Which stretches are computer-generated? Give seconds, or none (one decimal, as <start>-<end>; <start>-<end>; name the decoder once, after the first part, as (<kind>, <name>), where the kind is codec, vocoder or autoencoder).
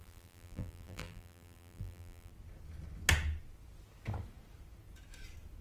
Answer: 0.0-2.3 (vocoder, BigVGAN v2)